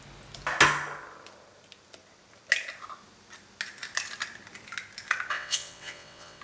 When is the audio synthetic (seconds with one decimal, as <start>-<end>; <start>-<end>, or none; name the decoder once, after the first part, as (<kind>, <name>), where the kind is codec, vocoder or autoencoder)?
5.3-6.4 (vocoder, WaveNeXt)